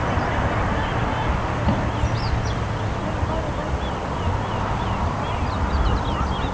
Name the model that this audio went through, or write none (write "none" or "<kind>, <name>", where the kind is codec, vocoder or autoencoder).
none